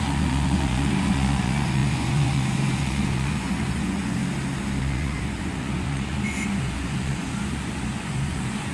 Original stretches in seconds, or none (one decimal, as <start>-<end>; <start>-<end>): 4.2-4.8